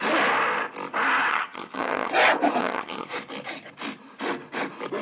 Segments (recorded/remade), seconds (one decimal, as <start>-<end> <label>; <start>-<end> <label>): 0.0-1.3 recorded; 1.3-2.1 remade; 2.1-2.6 recorded; 2.6-3.1 remade; 3.1-5.0 recorded